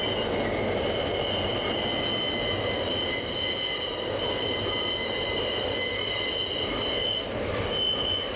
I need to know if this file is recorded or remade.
recorded